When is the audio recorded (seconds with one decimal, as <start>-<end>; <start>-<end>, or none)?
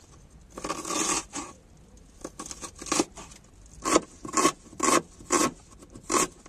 0.0-6.5